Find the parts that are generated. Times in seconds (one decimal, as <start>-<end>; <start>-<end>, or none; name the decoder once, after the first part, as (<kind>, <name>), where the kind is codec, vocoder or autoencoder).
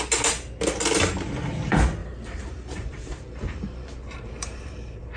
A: 2.0-5.2 (vocoder, BigVGAN v2)